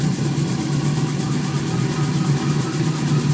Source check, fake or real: real